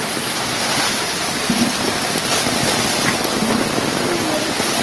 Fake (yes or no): no